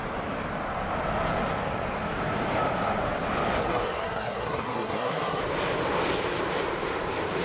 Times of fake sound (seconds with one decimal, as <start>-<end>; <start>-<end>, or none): 3.6-5.4